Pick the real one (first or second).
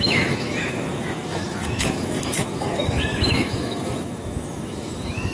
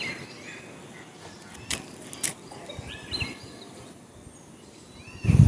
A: second